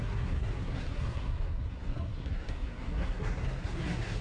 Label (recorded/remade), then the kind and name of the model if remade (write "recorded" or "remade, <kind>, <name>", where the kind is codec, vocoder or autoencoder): remade, codec, SNAC